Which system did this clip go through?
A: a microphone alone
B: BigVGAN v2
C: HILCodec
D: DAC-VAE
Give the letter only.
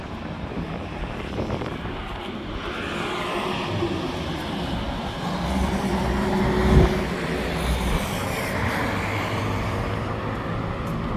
A